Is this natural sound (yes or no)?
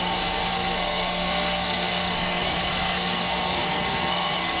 no